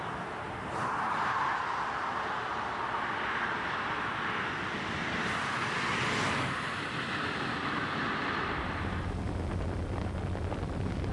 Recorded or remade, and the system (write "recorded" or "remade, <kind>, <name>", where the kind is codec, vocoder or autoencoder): recorded